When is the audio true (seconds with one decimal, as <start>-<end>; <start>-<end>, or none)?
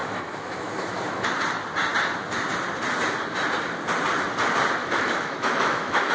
1.3-4.8